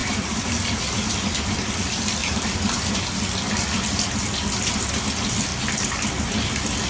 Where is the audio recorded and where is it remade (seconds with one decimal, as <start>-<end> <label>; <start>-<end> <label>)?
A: 0.0-0.8 remade; 0.8-2.2 recorded; 2.2-2.9 remade; 2.9-6.9 recorded